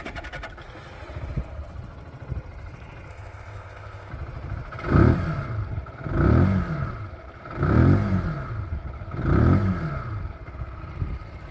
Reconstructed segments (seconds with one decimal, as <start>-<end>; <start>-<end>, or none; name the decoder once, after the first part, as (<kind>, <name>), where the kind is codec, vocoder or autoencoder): 3.1-4.1 (codec, ZipCodec)